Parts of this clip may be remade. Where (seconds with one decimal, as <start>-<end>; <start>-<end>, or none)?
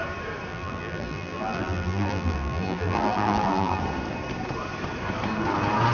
0.5-3.8